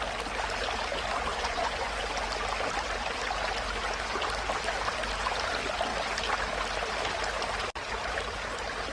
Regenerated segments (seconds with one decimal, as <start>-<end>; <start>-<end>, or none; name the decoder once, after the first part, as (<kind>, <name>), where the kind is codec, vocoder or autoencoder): 1.3-2.0 (vocoder, Vocos)